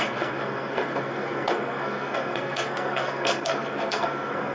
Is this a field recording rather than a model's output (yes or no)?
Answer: no